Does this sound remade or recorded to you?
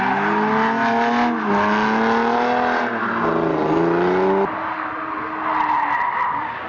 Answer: recorded